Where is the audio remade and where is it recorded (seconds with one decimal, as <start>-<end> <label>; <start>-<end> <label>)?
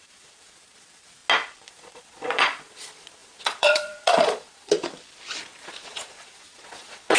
0.0-1.2 remade; 1.2-1.7 recorded; 1.7-4.8 remade; 4.8-5.4 recorded; 5.4-7.2 remade